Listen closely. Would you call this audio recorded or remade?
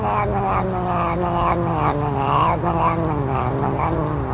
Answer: recorded